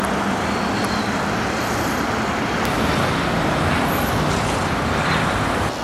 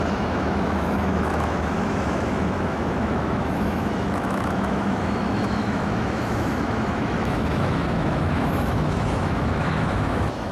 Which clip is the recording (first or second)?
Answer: first